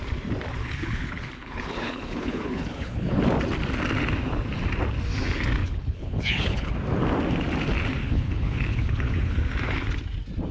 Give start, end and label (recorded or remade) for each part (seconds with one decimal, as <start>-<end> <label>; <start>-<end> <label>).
0.0-0.6 recorded; 0.6-3.2 remade; 3.2-5.6 recorded; 5.6-6.7 remade; 6.7-8.0 recorded; 8.0-9.4 remade; 9.4-10.5 recorded